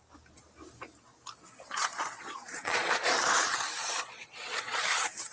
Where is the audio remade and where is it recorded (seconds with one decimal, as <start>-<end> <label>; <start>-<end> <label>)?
0.0-1.8 recorded; 1.8-3.1 remade; 3.1-3.8 recorded; 3.8-4.8 remade; 4.8-5.3 recorded

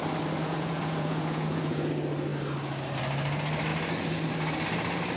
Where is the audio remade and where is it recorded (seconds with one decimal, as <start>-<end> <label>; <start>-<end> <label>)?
0.0-0.4 recorded; 0.4-1.9 remade; 1.9-5.2 recorded

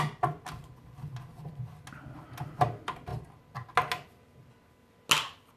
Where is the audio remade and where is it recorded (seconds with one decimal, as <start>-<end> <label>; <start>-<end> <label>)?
0.0-5.6 recorded

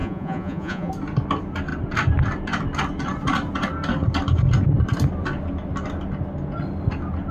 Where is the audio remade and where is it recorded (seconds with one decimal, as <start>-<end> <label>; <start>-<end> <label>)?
0.0-0.9 remade; 0.9-7.3 recorded

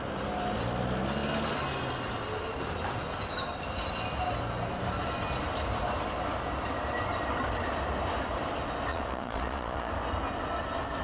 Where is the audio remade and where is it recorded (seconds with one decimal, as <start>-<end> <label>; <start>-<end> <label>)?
0.0-8.9 recorded; 8.9-9.9 remade; 9.9-11.0 recorded

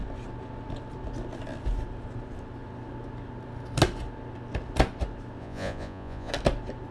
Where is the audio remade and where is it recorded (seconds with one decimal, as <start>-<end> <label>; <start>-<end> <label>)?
0.0-5.4 recorded; 5.4-6.3 remade; 6.3-6.9 recorded

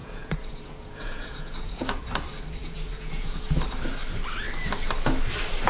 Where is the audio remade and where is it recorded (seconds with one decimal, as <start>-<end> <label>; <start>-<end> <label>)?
0.0-2.0 remade; 2.0-2.6 recorded; 2.6-3.4 remade; 3.4-5.7 recorded

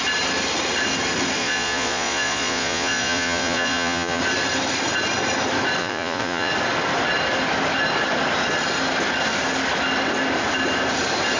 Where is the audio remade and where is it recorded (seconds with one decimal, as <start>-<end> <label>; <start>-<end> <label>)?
0.0-1.4 recorded; 1.4-4.2 remade; 4.2-5.8 recorded; 5.8-6.5 remade; 6.5-11.4 recorded